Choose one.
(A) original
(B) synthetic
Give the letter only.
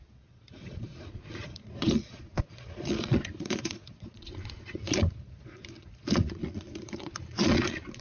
B